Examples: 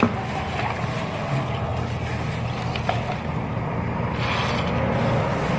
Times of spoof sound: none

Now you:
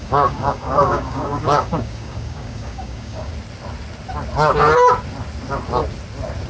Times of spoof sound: 0.0-3.3 (codec, DAC)

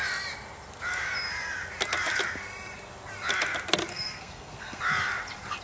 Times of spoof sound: 3.9-4.8 (codec, SNAC)